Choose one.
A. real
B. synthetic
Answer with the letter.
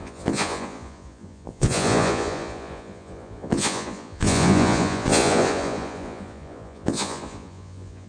B